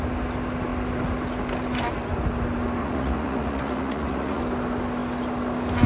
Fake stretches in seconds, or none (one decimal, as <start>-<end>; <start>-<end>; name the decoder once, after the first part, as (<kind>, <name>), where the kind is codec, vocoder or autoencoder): 2.8-4.4 (vocoder, Vocos)